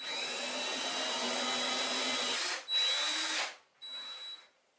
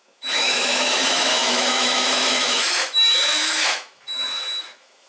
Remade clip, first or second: second